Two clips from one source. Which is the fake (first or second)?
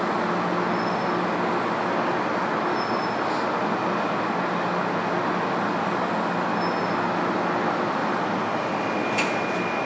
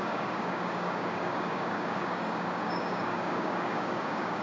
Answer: second